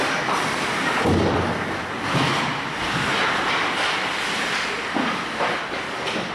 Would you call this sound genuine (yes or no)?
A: yes